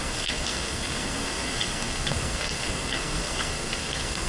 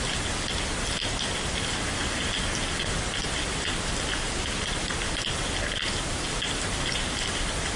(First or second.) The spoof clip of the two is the first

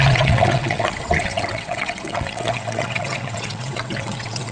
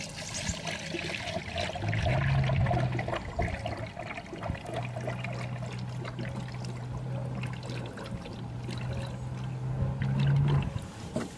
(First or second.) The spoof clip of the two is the first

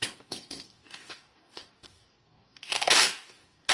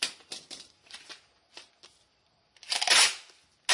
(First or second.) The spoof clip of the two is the first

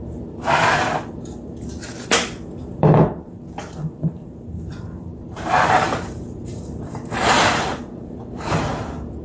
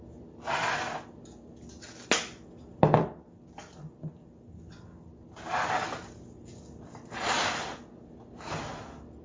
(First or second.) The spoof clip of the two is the first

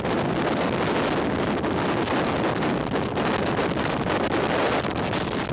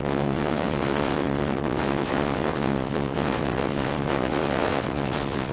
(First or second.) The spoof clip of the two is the second